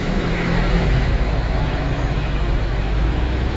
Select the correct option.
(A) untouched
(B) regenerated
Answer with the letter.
B